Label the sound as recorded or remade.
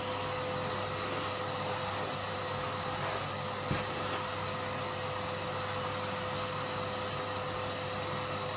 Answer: recorded